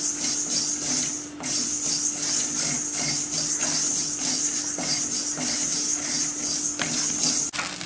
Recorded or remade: recorded